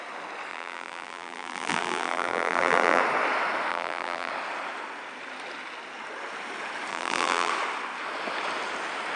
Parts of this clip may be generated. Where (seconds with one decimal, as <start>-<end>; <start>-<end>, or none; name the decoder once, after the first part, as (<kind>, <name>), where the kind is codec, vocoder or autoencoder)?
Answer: 0.5-3.0 (vocoder, BigVGAN v2); 3.7-4.3; 6.9-7.5